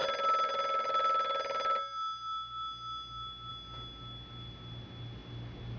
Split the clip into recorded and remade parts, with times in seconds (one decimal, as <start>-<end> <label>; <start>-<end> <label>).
0.0-5.8 recorded